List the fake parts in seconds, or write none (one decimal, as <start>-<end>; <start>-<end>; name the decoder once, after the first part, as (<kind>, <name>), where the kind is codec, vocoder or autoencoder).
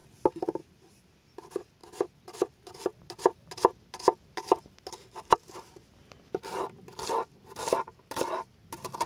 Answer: none